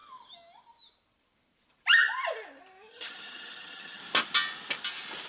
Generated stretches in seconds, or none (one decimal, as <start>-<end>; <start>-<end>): 2.9-4.0